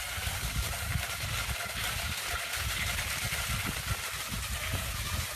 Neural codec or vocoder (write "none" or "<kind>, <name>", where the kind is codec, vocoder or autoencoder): none